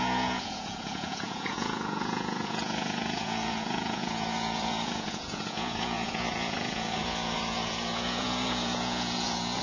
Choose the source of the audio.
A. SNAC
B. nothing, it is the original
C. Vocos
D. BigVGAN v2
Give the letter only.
C